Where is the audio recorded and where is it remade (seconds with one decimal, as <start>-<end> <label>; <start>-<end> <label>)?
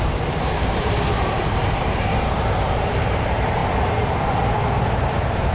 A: 0.0-5.5 remade